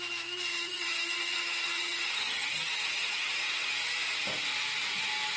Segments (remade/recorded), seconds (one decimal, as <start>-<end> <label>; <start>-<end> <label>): 0.0-0.5 recorded; 0.5-3.7 remade; 3.7-5.4 recorded